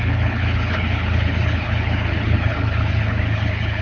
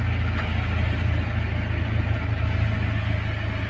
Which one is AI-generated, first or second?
first